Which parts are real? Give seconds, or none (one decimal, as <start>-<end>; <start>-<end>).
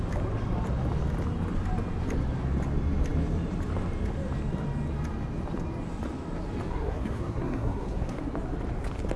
0.0-6.7; 8.2-9.2